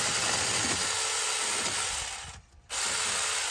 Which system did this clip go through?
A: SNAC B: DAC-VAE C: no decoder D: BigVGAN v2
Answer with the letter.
C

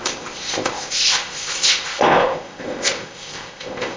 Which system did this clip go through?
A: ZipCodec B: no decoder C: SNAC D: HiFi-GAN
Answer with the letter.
A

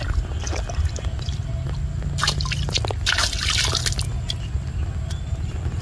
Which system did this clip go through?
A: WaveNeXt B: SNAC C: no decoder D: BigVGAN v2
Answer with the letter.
C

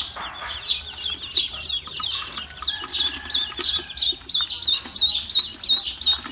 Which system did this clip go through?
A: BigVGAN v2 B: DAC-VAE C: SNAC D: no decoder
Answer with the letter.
D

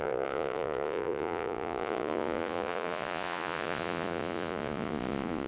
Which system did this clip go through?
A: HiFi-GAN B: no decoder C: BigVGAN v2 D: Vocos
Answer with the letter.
D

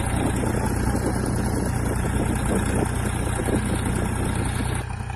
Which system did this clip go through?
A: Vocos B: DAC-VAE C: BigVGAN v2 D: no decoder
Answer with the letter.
D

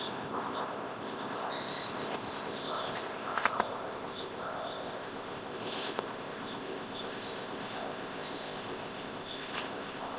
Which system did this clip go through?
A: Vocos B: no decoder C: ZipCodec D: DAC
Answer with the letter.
C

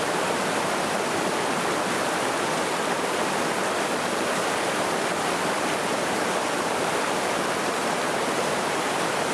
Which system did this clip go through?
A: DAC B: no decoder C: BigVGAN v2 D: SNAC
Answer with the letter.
C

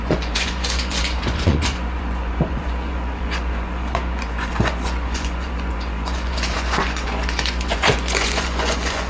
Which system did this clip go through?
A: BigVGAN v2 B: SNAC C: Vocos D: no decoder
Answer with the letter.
C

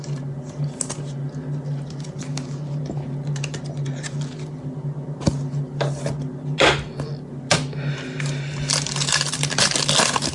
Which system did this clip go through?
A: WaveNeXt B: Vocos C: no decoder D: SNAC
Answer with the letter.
C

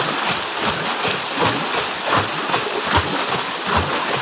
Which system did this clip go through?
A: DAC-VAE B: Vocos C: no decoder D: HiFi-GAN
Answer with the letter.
C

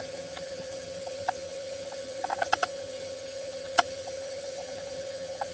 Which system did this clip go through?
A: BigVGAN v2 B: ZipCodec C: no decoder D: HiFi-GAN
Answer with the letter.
D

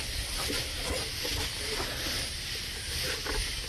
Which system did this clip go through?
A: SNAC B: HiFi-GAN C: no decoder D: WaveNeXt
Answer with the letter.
C